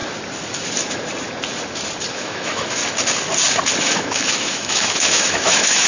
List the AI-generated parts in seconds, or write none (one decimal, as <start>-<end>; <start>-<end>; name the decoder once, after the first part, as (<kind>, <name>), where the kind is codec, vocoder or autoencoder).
2.1-2.8 (autoencoder, DAC-VAE); 3.8-5.9